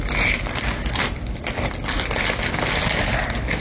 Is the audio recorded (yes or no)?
yes